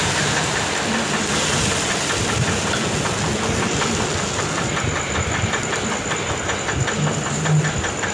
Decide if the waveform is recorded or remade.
recorded